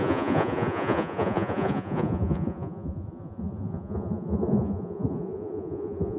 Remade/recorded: remade